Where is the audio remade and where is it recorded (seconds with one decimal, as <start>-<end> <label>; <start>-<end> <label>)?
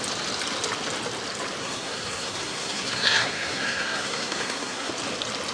0.0-1.6 recorded; 1.6-4.9 remade; 4.9-5.5 recorded